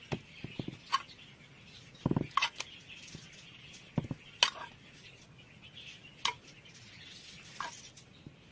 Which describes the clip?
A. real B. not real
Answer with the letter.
A